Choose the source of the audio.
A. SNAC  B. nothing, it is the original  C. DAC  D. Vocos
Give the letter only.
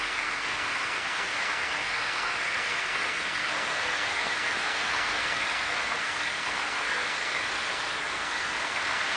A